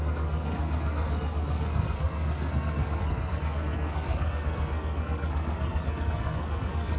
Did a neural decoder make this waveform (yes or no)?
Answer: yes